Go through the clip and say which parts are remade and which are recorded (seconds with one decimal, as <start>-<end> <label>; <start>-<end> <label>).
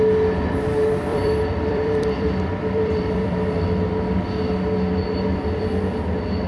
0.0-1.1 recorded; 1.1-3.4 remade; 3.4-6.5 recorded